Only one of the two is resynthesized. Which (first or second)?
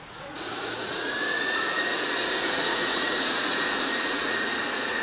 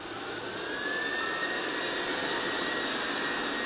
first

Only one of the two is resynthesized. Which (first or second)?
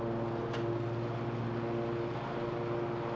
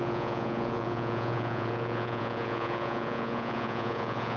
second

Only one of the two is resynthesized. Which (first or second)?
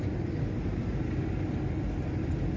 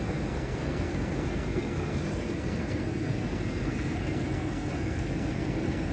second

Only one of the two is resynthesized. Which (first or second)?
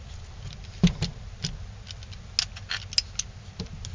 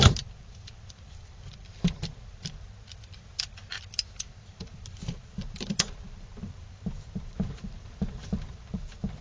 second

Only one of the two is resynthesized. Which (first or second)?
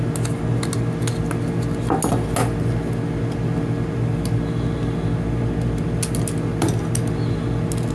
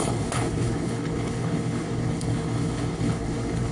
second